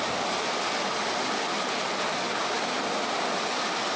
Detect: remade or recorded recorded